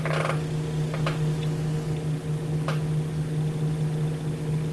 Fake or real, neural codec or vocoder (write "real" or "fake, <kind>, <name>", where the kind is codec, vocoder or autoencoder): real